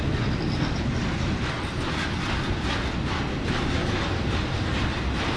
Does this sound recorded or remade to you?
recorded